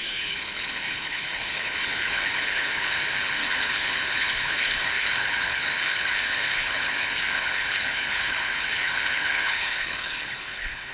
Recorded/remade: remade